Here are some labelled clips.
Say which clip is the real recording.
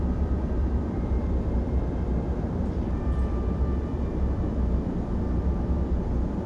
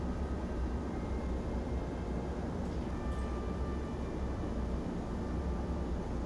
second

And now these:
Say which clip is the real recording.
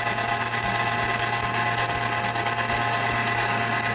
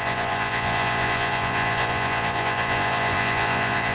first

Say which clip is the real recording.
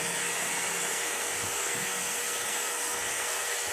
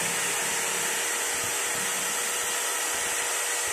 second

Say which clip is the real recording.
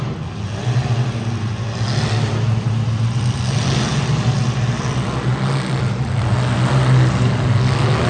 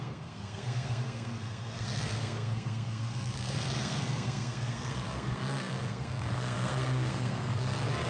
first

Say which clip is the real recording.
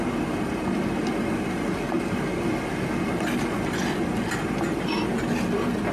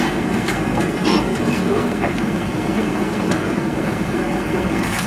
first